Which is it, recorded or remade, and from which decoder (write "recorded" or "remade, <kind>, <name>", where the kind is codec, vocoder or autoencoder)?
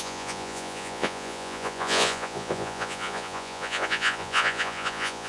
remade, vocoder, Vocos